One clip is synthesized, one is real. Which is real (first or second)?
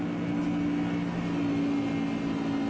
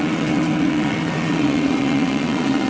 first